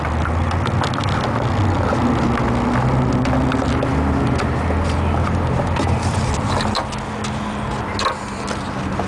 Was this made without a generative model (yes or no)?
yes